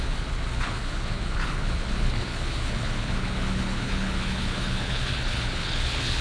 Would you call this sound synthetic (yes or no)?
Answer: yes